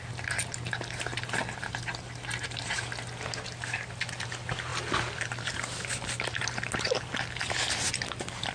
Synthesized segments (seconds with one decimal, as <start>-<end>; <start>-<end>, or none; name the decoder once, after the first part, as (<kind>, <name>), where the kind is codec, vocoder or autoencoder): none